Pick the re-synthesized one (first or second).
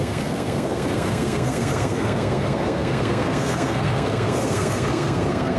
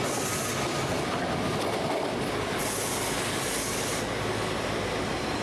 first